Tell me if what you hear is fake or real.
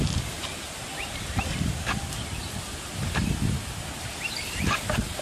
real